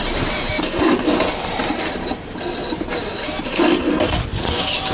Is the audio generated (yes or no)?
no